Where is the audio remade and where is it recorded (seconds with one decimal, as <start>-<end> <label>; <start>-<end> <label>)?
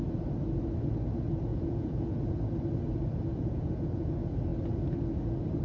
0.0-1.5 recorded; 1.5-2.4 remade; 2.4-3.3 recorded; 3.3-4.1 remade; 4.1-5.6 recorded